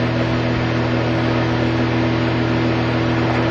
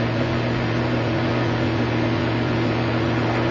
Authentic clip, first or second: first